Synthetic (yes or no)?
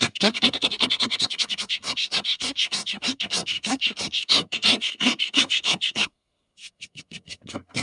yes